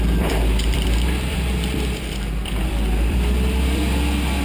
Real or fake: fake